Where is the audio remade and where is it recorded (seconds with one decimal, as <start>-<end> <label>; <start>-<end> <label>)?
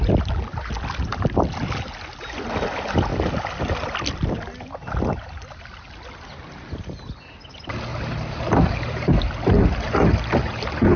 0.0-7.9 recorded; 7.9-9.1 remade; 9.1-11.0 recorded